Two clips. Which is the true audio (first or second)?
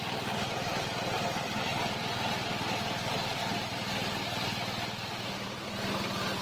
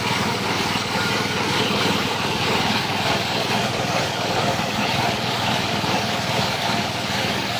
first